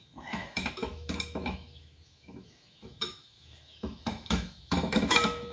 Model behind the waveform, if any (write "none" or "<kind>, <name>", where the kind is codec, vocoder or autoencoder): autoencoder, DAC-VAE